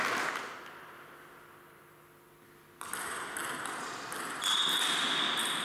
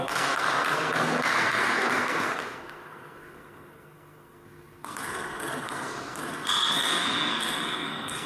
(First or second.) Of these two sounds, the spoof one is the second